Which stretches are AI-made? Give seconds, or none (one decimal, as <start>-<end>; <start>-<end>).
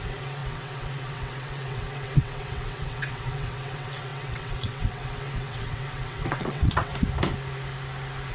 0.0-6.9